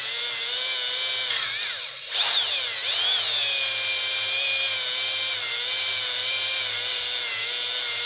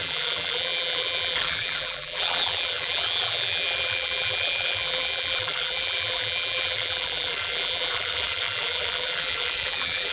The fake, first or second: second